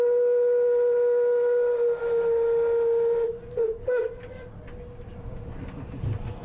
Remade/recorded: recorded